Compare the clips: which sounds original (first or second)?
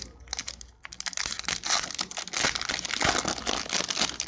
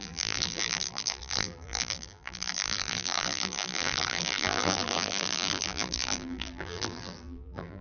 first